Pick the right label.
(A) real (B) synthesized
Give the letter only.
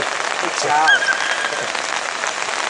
A